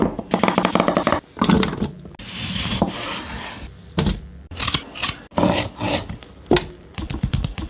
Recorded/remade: recorded